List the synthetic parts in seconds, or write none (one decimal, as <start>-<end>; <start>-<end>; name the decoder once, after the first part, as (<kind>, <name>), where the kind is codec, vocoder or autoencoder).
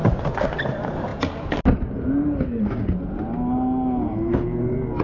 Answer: none